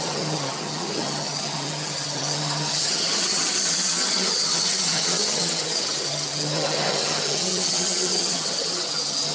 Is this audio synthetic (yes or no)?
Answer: yes